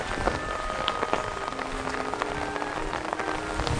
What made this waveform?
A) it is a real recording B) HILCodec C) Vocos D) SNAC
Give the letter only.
A